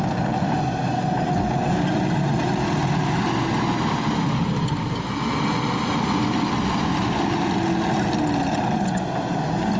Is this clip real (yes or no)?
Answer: yes